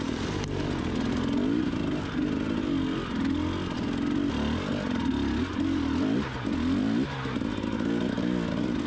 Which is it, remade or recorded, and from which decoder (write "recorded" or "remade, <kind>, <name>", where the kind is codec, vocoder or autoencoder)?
recorded